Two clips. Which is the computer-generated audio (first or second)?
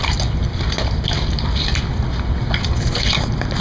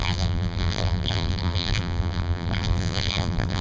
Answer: second